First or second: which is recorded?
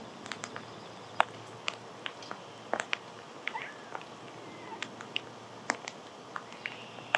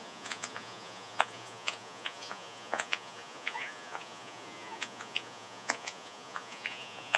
first